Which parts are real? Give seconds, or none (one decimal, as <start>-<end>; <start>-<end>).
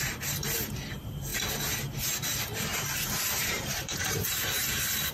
1.3-1.8